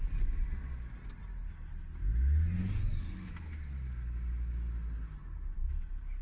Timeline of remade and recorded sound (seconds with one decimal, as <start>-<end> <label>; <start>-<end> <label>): 0.0-6.2 recorded

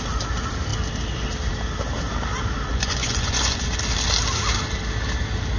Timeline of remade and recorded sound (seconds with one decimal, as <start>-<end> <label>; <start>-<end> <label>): 0.0-2.7 recorded; 2.7-3.7 remade; 3.7-5.6 recorded

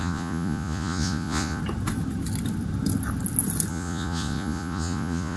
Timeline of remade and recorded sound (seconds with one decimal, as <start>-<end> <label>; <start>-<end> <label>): 0.0-1.6 remade; 1.6-3.7 recorded; 3.7-5.4 remade

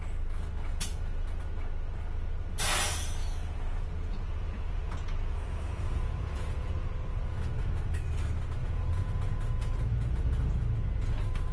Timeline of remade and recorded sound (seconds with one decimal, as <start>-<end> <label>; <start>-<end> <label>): 0.0-0.7 recorded; 0.7-1.4 remade; 1.4-3.2 recorded; 3.2-6.9 remade; 6.9-8.6 recorded; 8.6-10.5 remade; 10.5-11.5 recorded

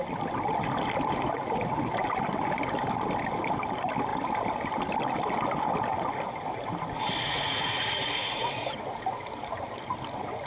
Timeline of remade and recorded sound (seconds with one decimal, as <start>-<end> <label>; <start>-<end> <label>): 0.0-7.3 recorded; 7.3-8.5 remade; 8.5-10.5 recorded

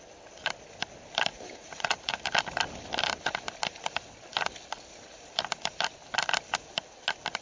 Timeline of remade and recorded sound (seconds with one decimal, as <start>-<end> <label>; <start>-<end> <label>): 0.0-1.3 recorded; 1.3-2.3 remade; 2.3-7.4 recorded